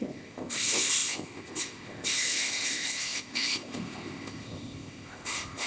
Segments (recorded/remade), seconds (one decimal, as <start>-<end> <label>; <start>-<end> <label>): 0.0-5.7 remade

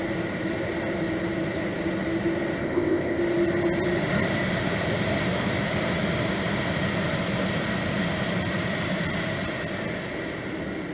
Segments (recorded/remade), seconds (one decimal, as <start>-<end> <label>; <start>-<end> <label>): 0.0-2.6 recorded; 2.6-3.2 remade; 3.2-10.9 recorded

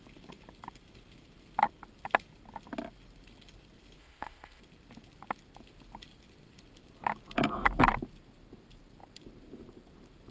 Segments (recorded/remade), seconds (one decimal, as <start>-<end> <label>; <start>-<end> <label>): 0.0-4.0 recorded; 4.0-4.6 remade; 4.6-10.3 recorded

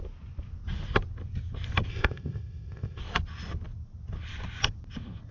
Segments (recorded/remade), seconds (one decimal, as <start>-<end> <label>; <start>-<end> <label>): 0.0-1.9 recorded; 1.9-3.0 remade; 3.0-5.3 recorded

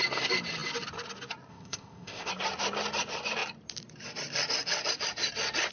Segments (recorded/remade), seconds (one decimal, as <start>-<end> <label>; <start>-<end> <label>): 0.0-1.5 recorded; 1.5-2.3 remade; 2.3-5.7 recorded

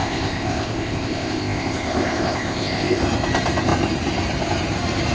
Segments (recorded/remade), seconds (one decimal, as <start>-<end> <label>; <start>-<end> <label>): 0.0-3.0 remade; 3.0-5.1 recorded

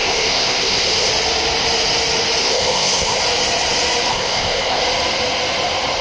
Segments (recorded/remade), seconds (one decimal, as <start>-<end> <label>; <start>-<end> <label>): 0.0-1.1 remade; 1.1-2.4 recorded; 2.4-3.2 remade; 3.2-4.1 recorded; 4.1-4.8 remade; 4.8-6.0 recorded

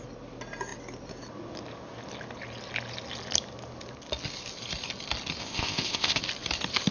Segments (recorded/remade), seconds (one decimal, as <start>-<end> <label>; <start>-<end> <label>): 0.0-5.4 recorded; 5.4-6.2 remade; 6.2-6.9 recorded